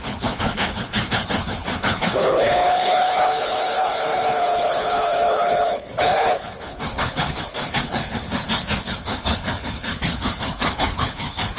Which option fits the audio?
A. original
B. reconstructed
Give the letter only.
B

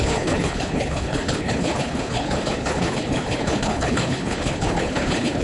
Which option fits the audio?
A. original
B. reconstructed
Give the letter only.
B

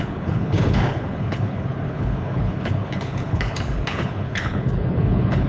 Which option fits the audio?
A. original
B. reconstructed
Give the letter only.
B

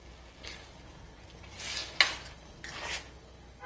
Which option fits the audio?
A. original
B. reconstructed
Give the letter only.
A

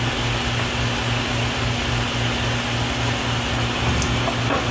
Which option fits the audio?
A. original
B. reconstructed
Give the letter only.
A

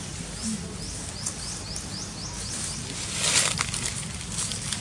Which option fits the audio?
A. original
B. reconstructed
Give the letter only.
A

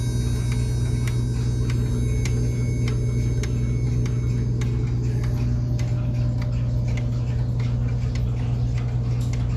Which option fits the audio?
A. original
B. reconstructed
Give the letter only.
A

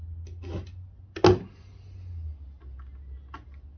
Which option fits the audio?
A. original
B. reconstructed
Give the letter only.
A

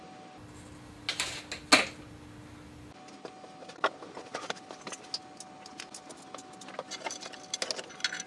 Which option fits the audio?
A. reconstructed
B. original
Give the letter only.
B